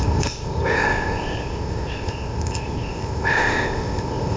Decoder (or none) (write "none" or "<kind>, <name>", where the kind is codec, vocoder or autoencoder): codec, ZipCodec